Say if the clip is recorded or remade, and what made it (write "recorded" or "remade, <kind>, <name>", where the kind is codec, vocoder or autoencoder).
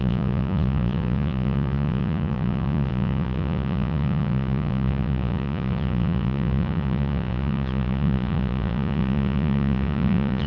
remade, vocoder, Vocos